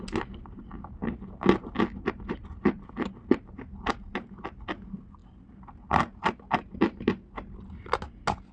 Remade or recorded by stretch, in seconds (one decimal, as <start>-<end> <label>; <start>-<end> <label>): 0.0-8.5 recorded

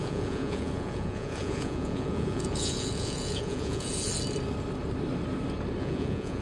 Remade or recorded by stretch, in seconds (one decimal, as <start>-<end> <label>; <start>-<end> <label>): 0.0-4.1 remade; 4.1-5.8 recorded; 5.8-6.4 remade

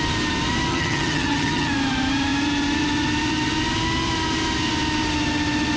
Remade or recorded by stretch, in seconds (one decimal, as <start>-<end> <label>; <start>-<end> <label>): 0.0-0.7 recorded; 0.7-1.7 remade; 1.7-5.8 recorded

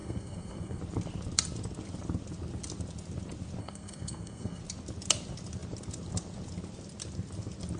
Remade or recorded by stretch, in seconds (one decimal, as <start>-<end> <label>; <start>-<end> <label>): 0.0-0.8 remade; 0.8-3.6 recorded; 3.6-4.6 remade; 4.6-7.8 recorded

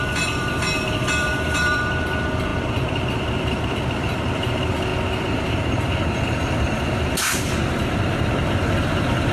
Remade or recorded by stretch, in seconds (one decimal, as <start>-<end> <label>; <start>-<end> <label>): 0.0-4.9 remade; 4.9-6.2 recorded; 6.2-7.6 remade; 7.6-8.6 recorded; 8.6-9.3 remade

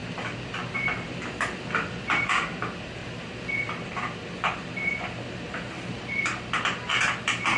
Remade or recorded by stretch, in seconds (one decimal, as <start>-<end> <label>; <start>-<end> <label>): 0.0-7.6 remade

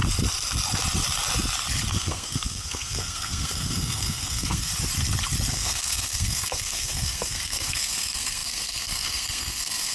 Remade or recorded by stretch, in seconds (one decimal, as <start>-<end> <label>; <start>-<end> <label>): 0.0-1.9 recorded; 1.9-4.7 remade; 4.7-5.5 recorded; 5.5-9.9 remade